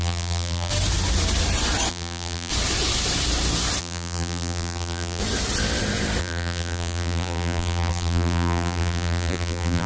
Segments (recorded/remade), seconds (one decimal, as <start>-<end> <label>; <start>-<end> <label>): 0.0-0.7 remade; 0.7-1.9 recorded; 1.9-2.5 remade; 2.5-3.8 recorded; 3.8-5.2 remade; 5.2-6.2 recorded; 6.2-9.9 remade